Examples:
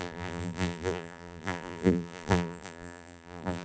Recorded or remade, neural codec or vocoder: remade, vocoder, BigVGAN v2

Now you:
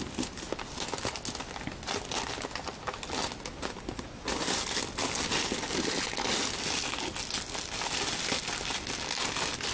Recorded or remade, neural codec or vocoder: recorded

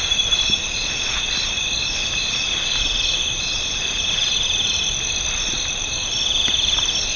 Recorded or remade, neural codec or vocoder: remade, vocoder, BigVGAN v2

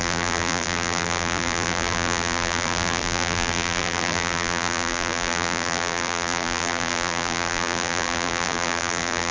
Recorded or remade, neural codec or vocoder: remade, vocoder, BigVGAN v2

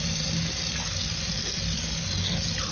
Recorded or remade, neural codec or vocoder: recorded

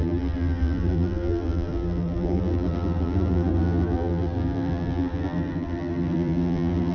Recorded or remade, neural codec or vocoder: remade, vocoder, BigVGAN v2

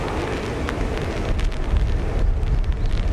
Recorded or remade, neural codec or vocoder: recorded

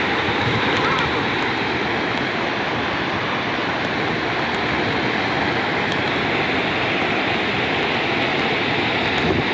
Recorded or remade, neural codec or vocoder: recorded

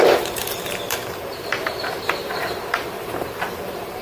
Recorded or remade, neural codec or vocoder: remade, vocoder, BigVGAN v2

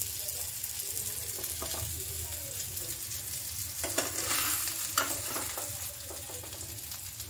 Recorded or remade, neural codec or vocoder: recorded